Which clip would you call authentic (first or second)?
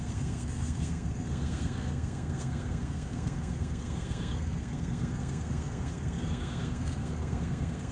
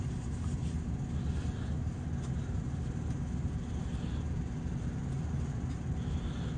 second